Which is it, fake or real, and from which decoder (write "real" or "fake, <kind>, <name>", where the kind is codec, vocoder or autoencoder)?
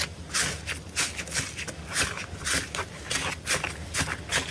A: real